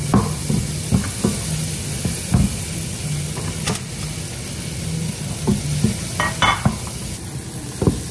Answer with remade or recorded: recorded